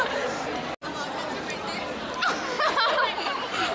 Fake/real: real